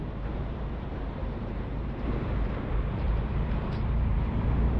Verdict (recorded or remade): remade